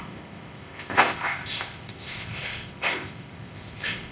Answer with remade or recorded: remade